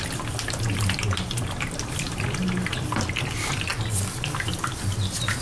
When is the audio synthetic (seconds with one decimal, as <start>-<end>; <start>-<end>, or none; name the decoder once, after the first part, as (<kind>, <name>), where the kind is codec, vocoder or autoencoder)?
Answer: none